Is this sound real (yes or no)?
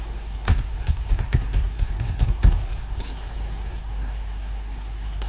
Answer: no